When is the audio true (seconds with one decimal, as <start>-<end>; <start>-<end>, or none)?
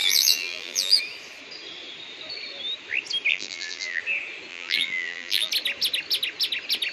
1.0-3.3; 4.0-4.5; 5.5-6.9